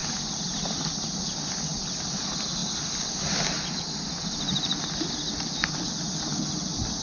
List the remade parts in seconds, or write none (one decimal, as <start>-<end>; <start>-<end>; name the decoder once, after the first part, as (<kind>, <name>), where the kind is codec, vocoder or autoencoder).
none